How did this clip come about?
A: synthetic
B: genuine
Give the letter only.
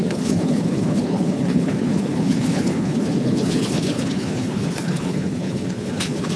A